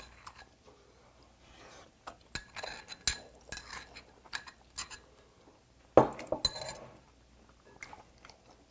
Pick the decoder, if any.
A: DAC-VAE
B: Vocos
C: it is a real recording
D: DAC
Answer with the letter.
C